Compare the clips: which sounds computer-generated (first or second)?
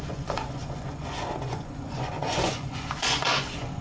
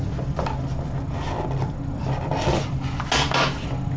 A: first